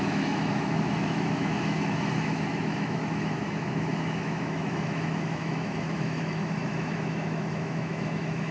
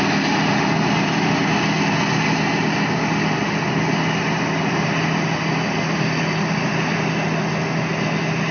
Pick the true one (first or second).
second